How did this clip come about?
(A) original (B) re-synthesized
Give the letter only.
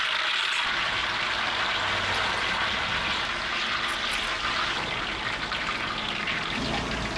A